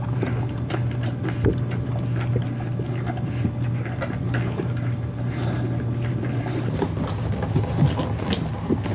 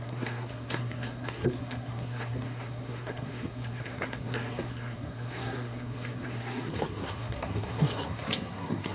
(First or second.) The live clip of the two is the first